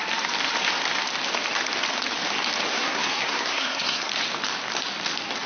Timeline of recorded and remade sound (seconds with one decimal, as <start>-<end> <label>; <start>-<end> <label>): 0.0-2.7 recorded; 2.7-4.1 remade; 4.1-5.5 recorded